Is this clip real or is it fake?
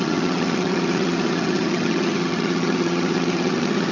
fake